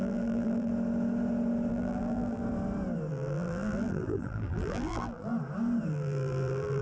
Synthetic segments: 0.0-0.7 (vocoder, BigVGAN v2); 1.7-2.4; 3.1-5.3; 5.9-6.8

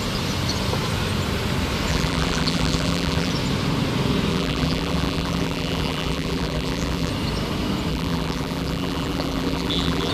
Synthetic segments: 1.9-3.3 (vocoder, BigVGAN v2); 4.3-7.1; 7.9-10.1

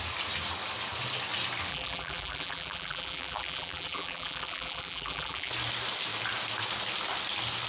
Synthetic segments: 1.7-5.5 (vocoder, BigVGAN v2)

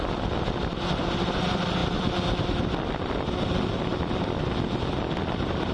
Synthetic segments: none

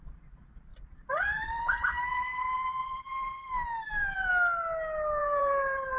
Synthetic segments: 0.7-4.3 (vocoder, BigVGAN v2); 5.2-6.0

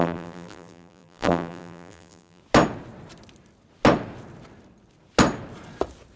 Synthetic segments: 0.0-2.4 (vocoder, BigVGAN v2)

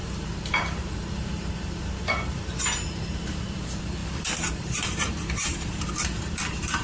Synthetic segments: 0.0-6.8 (vocoder, BigVGAN v2)